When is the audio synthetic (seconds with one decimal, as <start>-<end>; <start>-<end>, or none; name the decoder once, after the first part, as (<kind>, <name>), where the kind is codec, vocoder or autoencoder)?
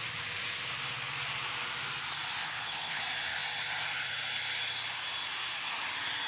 2.4-3.0 (codec, HILCodec)